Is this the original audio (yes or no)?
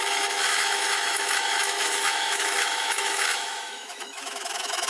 no